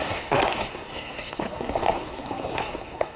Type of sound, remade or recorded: remade